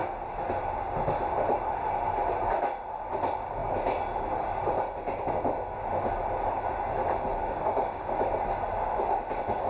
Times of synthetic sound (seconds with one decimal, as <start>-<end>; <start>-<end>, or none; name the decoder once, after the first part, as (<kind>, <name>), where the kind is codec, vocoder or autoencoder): 7.4-8.3 (codec, DAC)